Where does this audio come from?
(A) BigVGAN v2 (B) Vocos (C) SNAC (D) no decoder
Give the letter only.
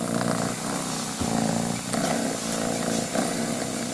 D